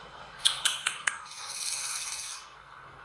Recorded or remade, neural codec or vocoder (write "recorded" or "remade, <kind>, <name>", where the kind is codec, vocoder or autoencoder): remade, codec, SNAC